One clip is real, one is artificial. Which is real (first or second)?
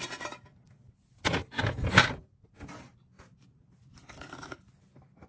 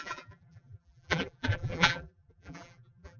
first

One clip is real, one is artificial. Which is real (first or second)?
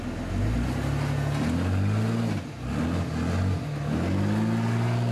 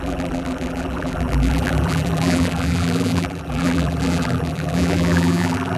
first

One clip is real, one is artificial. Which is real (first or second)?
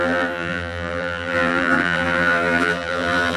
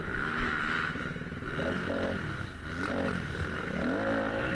second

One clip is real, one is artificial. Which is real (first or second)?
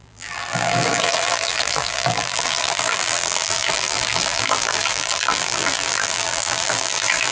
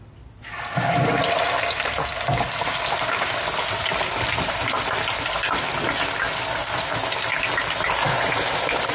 second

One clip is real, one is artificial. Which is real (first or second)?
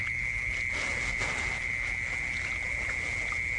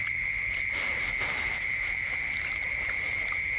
first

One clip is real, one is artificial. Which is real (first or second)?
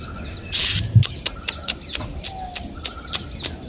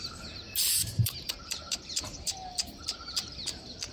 first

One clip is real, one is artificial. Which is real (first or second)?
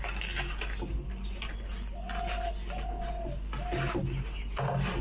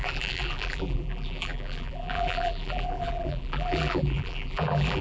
first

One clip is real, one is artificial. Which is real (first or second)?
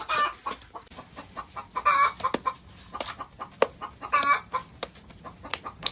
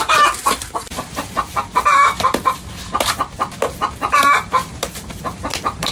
first